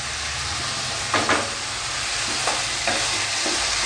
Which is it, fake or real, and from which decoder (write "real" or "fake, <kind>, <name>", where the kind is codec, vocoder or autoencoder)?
real